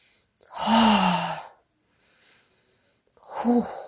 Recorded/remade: recorded